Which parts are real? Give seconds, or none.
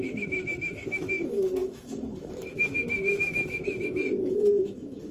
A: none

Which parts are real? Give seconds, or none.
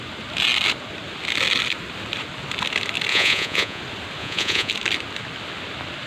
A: 0.0-3.1; 3.8-4.2; 4.7-6.1